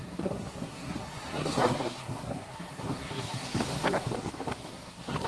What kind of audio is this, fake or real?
fake